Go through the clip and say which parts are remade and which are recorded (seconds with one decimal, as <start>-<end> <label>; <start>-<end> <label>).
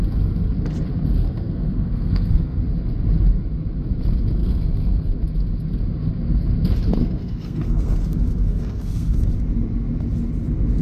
0.0-1.2 recorded; 1.2-2.6 remade; 2.6-4.4 recorded; 4.4-5.2 remade; 5.2-7.0 recorded; 7.0-9.3 remade; 9.3-10.8 recorded